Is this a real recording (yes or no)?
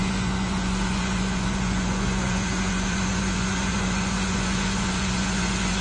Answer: no